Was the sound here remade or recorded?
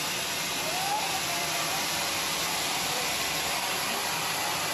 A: remade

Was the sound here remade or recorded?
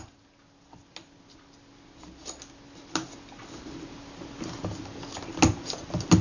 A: recorded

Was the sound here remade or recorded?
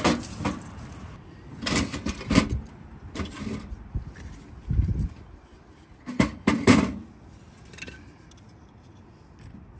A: recorded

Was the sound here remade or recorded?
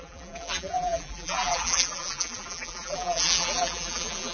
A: remade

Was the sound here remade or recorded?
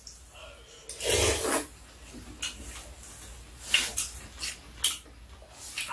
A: recorded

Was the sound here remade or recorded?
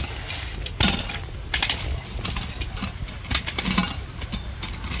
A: recorded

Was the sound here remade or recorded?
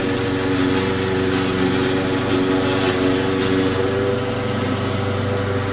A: recorded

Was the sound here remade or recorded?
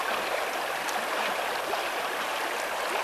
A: recorded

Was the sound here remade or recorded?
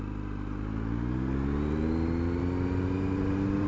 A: recorded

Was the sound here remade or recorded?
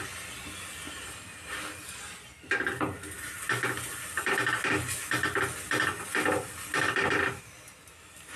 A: recorded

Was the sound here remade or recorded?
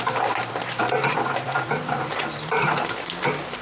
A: remade